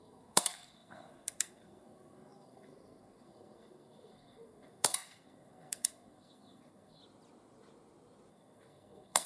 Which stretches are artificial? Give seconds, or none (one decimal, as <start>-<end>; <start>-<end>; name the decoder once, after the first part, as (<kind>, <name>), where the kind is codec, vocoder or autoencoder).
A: 0.0-7.0 (codec, SNAC); 8.3-9.3